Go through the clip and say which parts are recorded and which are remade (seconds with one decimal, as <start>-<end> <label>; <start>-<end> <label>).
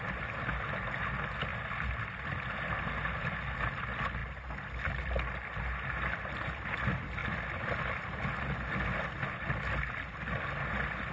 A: 0.0-1.5 recorded; 1.5-2.0 remade; 2.0-11.1 recorded